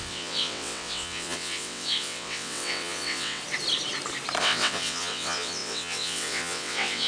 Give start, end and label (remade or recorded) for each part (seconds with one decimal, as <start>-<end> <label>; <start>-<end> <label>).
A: 0.0-3.4 remade; 3.4-4.4 recorded; 4.4-7.1 remade